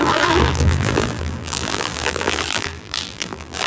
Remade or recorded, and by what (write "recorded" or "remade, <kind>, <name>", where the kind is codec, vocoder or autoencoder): remade, vocoder, BigVGAN v2